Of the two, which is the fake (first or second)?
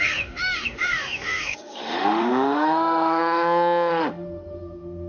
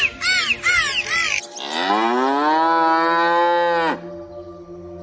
first